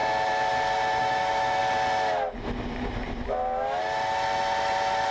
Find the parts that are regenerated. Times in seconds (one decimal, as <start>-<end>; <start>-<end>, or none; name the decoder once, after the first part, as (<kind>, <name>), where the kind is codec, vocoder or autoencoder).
1.0-1.6 (autoencoder, DAC-VAE)